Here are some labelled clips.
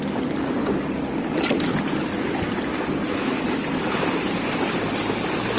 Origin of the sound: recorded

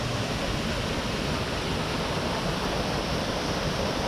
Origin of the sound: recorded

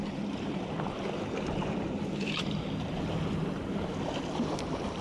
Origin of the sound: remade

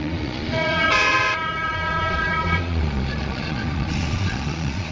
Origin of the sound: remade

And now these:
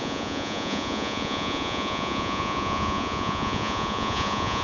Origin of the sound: remade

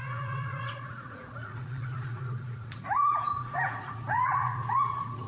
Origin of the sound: remade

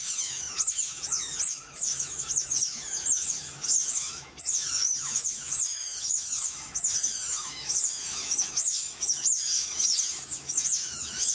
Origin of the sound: remade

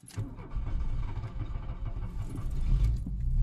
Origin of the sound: recorded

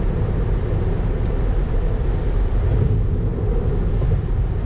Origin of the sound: recorded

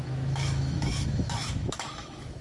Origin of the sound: remade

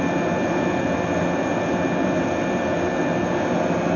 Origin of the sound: recorded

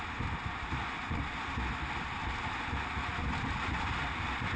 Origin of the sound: recorded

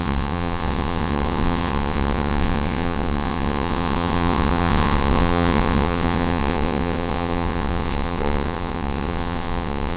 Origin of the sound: remade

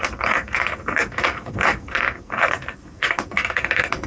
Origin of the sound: remade